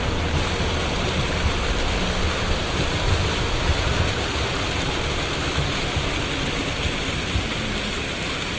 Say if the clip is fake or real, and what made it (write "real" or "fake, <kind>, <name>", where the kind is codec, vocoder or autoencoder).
real